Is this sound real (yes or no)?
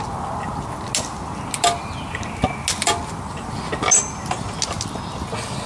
yes